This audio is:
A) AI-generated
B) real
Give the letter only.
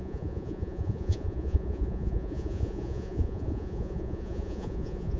A